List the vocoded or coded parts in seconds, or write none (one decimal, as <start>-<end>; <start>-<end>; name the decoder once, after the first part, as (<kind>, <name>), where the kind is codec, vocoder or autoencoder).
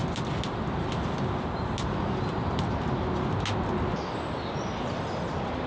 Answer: none